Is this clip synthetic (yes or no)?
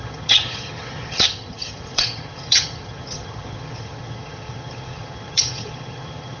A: yes